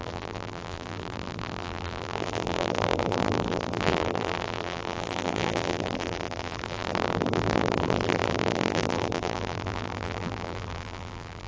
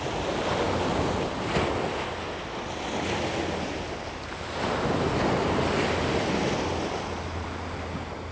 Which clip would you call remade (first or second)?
first